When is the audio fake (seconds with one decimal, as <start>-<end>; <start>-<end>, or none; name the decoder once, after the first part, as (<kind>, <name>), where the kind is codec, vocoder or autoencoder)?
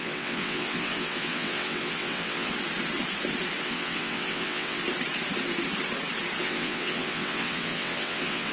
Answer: 0.0-2.5 (vocoder, WaveNeXt); 3.6-4.8; 6.4-8.5